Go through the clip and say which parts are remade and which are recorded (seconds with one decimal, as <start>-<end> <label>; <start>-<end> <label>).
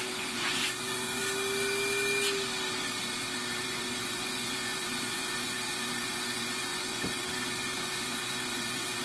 0.0-1.2 remade; 1.2-3.6 recorded; 3.6-9.0 remade